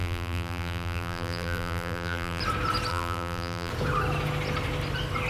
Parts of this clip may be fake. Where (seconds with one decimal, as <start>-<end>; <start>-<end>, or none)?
0.0-2.4; 2.9-3.7